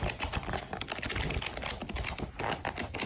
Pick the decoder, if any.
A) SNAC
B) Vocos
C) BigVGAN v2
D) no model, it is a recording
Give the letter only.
D